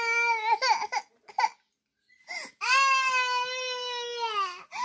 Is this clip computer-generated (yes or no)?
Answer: no